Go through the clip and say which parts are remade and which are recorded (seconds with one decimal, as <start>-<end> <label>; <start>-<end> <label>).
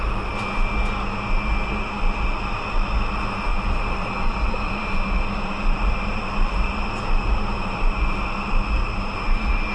0.0-3.5 recorded; 3.5-8.0 remade; 8.0-8.8 recorded; 8.8-9.7 remade